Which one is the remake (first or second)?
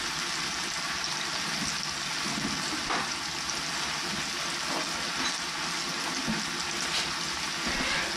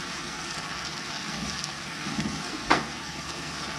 second